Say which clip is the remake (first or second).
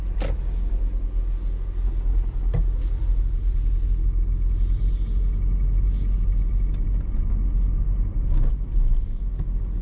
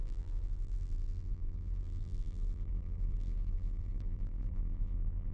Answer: second